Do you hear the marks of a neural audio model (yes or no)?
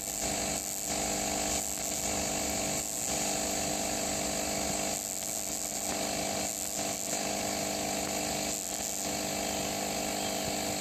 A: no